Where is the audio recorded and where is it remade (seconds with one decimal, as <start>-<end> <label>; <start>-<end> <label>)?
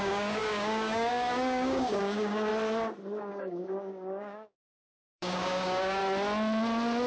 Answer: 0.0-2.5 remade; 2.5-3.2 recorded; 3.2-6.0 remade; 6.0-7.1 recorded